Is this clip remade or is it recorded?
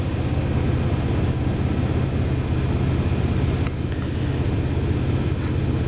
recorded